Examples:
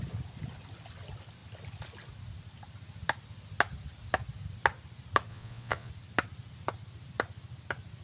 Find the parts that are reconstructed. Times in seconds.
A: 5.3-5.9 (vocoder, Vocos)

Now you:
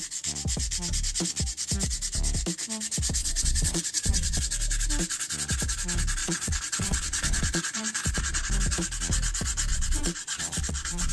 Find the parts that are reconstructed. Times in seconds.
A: 3.2-4.4 (vocoder, Vocos); 6.2-8.5; 9.7-11.1

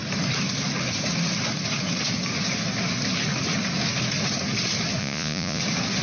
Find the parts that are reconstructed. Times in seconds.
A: 5.0-5.6 (vocoder, Vocos)

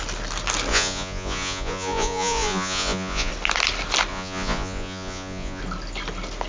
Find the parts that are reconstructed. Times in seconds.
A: 0.7-3.3 (vocoder, Vocos); 4.1-5.6

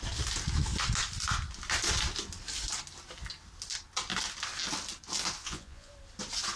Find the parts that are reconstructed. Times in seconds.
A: 5.4-5.9 (vocoder, Vocos)

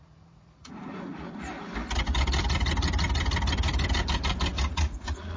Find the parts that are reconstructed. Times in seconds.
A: 0.0-1.5 (vocoder, Vocos); 4.7-5.4